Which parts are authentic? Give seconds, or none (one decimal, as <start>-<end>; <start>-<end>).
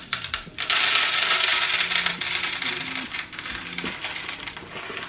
0.0-5.1